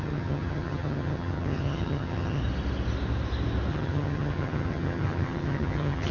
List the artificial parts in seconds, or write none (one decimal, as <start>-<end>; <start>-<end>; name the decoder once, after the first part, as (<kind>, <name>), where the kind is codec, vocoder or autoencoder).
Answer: 0.0-2.4 (vocoder, HiFi-GAN); 3.7-6.1